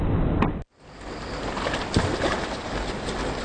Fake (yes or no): no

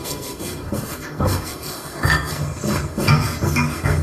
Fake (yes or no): yes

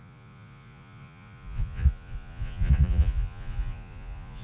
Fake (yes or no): yes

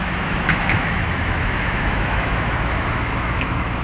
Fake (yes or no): yes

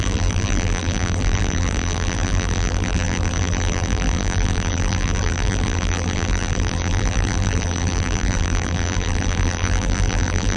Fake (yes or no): yes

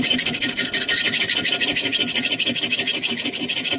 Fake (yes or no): no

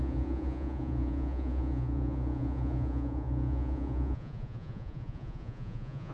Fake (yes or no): yes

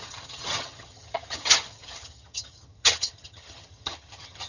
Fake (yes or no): yes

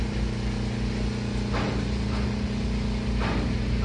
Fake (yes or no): no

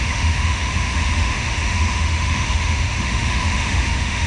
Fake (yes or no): yes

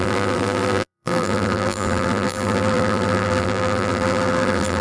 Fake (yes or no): yes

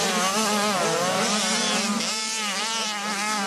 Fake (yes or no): no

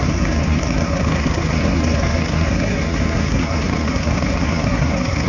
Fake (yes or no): yes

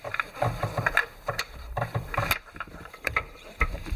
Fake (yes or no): yes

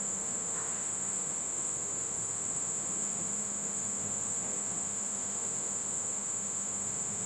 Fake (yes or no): yes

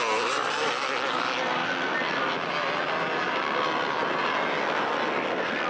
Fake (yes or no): no